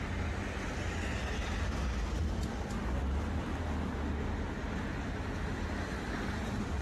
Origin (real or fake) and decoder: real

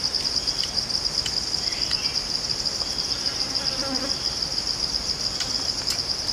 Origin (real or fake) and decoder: real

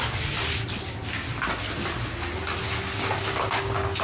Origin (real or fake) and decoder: real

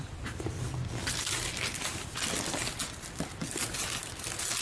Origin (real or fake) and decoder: real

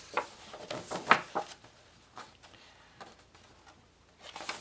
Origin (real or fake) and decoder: real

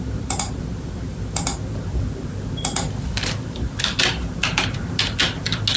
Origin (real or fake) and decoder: real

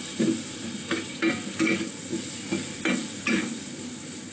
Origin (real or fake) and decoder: real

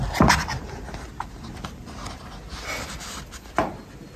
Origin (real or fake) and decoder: real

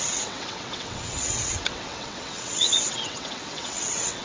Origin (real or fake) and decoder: fake, vocoder, WaveNeXt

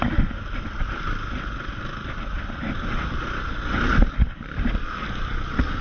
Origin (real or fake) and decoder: real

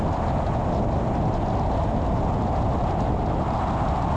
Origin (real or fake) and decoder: real